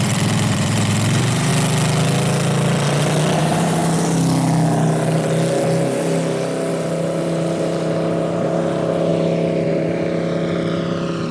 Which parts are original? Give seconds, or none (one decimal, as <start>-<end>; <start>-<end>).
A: 1.5-3.4; 3.8-6.7; 9.1-9.7